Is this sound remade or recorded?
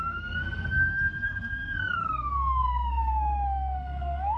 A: remade